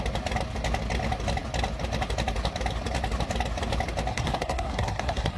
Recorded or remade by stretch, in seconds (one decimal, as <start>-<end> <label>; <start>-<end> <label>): 0.0-4.1 recorded; 4.1-5.4 remade

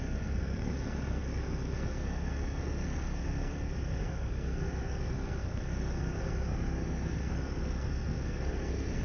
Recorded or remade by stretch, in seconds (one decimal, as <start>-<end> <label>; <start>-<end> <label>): 0.0-9.0 remade

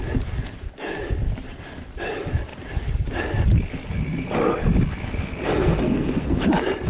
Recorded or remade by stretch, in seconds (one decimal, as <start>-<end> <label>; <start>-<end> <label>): 0.0-5.6 recorded; 5.6-6.5 remade; 6.5-6.9 recorded